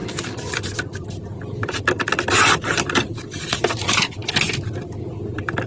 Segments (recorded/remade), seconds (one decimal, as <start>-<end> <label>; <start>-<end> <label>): 0.0-5.7 recorded